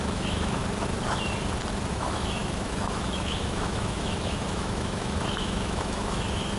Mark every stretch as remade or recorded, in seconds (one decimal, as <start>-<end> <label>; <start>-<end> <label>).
0.0-0.6 remade; 0.6-1.9 recorded; 1.9-6.6 remade